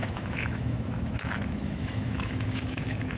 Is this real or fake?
fake